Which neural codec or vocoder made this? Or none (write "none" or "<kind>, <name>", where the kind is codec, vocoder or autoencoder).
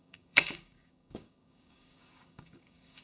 codec, DAC